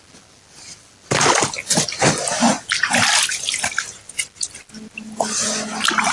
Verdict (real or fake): real